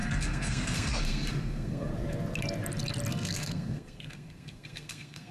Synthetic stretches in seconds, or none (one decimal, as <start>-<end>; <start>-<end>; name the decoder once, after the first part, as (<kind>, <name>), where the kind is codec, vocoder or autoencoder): 0.0-1.9 (codec, SNAC); 3.1-5.3